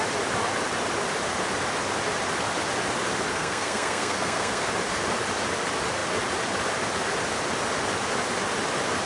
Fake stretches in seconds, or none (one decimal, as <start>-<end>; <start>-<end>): 3.3-4.7